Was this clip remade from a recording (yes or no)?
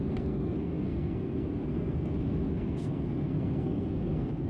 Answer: yes